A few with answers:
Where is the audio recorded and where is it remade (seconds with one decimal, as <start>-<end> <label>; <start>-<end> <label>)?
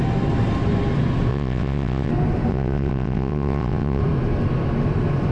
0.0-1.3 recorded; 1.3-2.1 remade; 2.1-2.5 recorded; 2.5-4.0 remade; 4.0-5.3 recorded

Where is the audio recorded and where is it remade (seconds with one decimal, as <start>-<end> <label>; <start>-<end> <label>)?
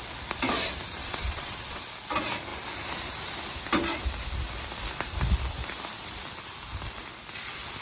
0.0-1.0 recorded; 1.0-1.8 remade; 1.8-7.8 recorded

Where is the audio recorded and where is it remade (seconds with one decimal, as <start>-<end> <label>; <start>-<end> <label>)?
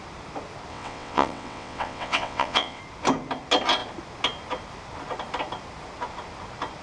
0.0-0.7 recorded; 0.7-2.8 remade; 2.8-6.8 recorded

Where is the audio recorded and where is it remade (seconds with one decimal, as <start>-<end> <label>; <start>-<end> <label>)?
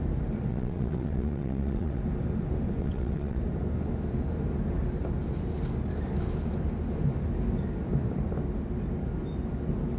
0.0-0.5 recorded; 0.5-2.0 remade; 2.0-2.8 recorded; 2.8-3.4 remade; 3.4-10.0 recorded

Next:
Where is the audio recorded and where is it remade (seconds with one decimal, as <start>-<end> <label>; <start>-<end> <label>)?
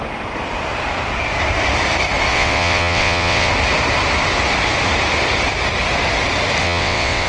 0.0-2.3 recorded; 2.3-3.5 remade; 3.5-6.6 recorded; 6.6-7.3 remade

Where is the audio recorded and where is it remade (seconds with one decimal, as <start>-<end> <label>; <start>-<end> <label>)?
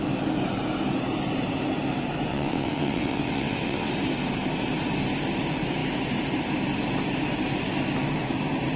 0.0-2.3 recorded; 2.3-3.9 remade; 3.9-8.8 recorded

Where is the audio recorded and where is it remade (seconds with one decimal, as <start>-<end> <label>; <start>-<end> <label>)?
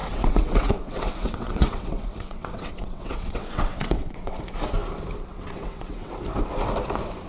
0.0-4.4 remade; 4.4-5.3 recorded; 5.3-6.1 remade; 6.1-7.3 recorded